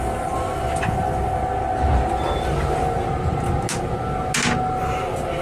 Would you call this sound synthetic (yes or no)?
no